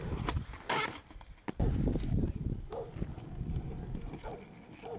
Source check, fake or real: real